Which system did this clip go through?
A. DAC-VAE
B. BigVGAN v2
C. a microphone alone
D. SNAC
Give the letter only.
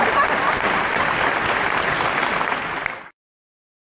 C